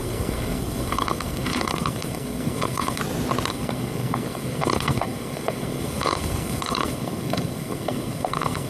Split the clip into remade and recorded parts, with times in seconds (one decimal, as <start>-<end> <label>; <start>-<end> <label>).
0.0-3.0 remade; 3.0-3.5 recorded; 3.5-8.7 remade